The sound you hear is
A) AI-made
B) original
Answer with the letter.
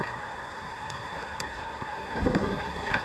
A